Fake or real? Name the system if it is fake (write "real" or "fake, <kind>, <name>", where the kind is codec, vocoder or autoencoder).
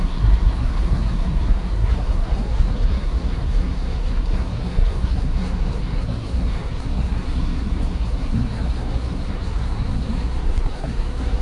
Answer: fake, codec, SNAC